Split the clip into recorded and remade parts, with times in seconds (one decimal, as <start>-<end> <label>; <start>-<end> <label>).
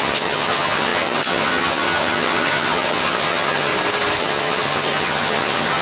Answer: 0.0-3.7 remade; 3.7-4.2 recorded; 4.2-5.8 remade